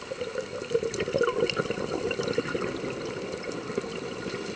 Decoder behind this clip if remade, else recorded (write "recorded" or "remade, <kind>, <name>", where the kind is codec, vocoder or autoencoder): recorded